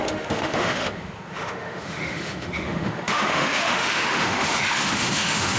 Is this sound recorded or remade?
remade